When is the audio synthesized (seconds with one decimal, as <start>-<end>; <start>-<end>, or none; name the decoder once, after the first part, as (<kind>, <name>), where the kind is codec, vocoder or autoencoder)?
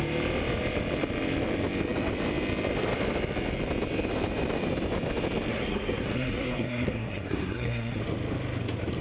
5.5-8.0 (codec, SNAC)